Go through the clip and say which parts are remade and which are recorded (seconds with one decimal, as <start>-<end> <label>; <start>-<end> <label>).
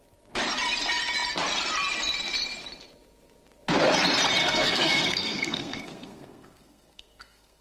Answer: 0.0-4.4 recorded; 4.4-7.6 remade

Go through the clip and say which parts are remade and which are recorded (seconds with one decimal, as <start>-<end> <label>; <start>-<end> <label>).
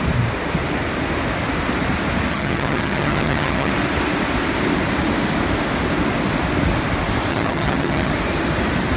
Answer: 0.0-2.3 recorded; 2.3-3.7 remade; 3.7-7.3 recorded; 7.3-8.1 remade; 8.1-9.0 recorded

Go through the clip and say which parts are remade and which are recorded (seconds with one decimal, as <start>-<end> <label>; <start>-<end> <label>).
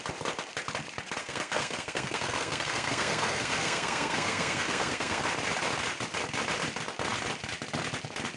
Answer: 0.0-1.2 recorded; 1.2-5.2 remade; 5.2-8.4 recorded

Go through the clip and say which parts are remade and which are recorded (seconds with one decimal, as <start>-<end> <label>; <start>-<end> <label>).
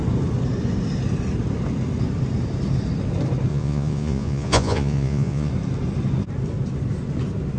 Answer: 0.0-3.5 recorded; 3.5-5.5 remade; 5.5-7.6 recorded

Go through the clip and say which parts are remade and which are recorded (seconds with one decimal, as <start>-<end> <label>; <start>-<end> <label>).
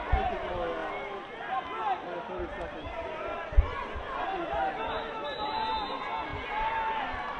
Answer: 0.0-7.4 recorded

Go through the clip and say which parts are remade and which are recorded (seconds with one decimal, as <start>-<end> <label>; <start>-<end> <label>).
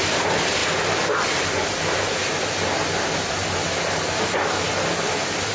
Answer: 0.0-0.6 remade; 0.6-1.8 recorded; 1.8-2.2 remade; 2.2-5.5 recorded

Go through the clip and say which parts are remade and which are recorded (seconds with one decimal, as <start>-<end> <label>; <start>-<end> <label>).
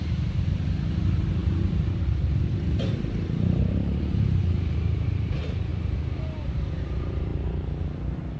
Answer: 0.0-5.7 remade; 5.7-6.4 recorded; 6.4-7.3 remade; 7.3-8.0 recorded; 8.0-8.4 remade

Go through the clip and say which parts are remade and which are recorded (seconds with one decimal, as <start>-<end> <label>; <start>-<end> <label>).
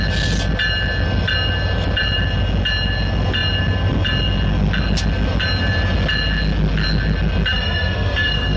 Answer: 0.0-7.5 recorded; 7.5-8.6 remade